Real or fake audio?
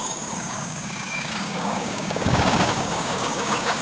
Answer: fake